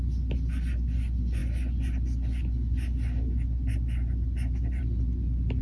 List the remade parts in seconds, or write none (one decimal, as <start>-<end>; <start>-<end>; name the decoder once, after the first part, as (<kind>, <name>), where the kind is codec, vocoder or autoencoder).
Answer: none